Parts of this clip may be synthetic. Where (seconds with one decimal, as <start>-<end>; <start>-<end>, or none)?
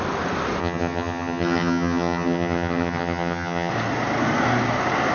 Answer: 0.6-3.7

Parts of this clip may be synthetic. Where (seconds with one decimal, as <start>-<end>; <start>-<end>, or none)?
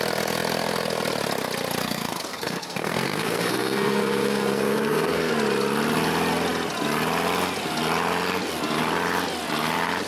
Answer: 1.8-5.3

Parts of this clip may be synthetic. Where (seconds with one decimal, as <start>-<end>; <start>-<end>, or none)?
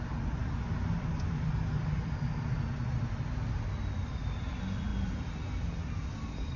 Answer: none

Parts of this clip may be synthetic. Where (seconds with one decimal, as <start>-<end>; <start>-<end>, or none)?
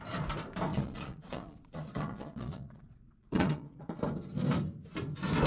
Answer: 0.7-4.0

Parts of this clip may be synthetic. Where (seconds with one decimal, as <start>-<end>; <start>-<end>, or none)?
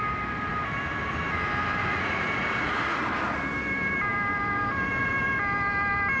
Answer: 1.8-3.1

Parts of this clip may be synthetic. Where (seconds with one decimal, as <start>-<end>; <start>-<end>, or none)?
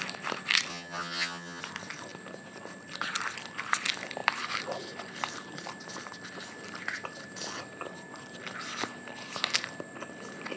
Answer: 0.7-1.6